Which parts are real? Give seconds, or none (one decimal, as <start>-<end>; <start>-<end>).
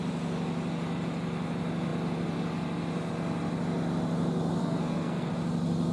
0.0-4.6; 5.3-5.9